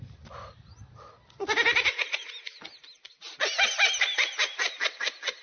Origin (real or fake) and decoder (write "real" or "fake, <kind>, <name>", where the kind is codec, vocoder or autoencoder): real